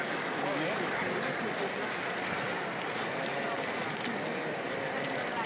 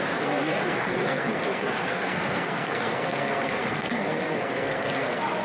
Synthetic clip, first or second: second